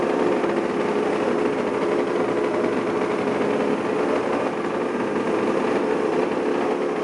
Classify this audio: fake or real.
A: real